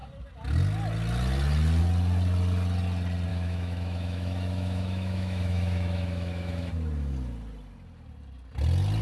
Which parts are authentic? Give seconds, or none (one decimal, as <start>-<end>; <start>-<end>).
0.0-3.3; 6.7-9.0